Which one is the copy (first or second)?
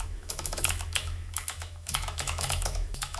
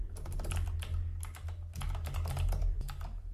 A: first